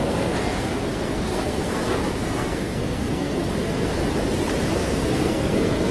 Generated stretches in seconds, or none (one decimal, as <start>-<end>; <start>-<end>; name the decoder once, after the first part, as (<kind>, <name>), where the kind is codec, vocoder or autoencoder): 0.0-4.0 (codec, SNAC); 4.7-5.9